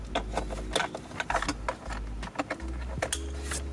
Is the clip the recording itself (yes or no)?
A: yes